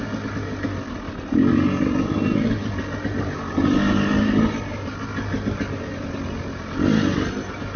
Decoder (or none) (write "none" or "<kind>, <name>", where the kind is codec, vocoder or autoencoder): none